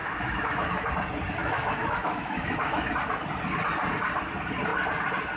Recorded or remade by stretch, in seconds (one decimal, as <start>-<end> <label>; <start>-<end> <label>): 0.0-0.9 remade; 0.9-1.4 recorded; 1.4-2.9 remade; 2.9-5.4 recorded